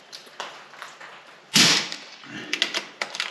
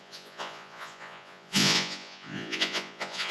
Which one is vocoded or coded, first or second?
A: second